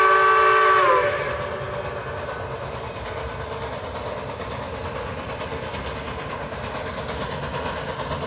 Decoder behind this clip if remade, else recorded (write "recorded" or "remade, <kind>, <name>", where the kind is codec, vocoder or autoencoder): recorded